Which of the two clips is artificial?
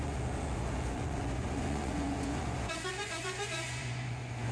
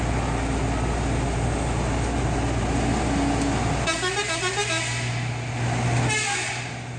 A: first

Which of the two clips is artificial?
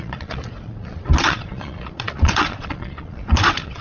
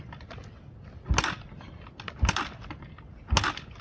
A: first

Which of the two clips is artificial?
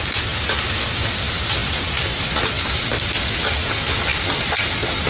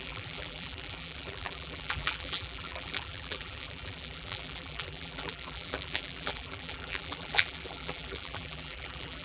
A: second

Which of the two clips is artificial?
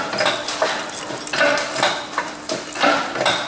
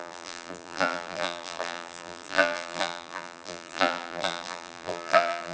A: second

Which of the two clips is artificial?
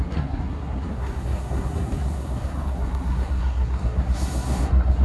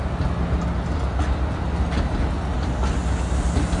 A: first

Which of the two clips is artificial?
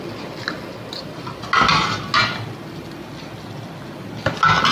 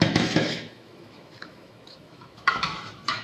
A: second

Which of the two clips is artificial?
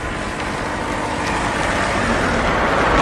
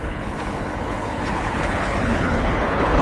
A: second